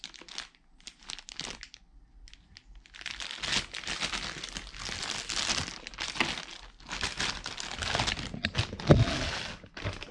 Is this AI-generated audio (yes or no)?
no